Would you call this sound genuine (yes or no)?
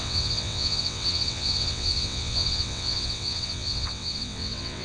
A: no